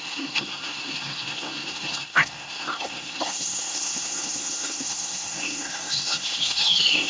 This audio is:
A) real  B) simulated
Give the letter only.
B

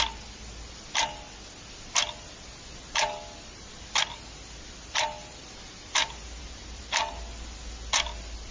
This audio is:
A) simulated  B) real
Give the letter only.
B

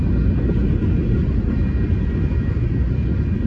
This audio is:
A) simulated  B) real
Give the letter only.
B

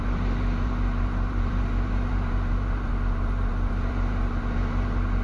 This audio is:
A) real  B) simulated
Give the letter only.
B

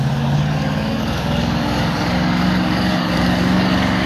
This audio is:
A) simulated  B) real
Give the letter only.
A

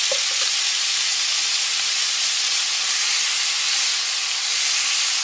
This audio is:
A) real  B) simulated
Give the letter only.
A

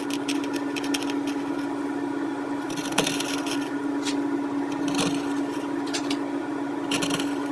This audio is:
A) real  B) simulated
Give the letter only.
A